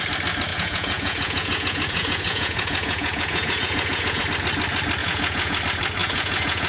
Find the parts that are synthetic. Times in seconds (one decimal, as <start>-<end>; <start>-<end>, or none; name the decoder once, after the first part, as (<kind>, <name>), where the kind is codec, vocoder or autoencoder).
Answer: 0.5-4.2 (vocoder, Vocos); 5.0-5.6; 6.0-6.7